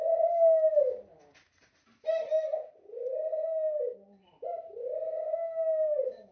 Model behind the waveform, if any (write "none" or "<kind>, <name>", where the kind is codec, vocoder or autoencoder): none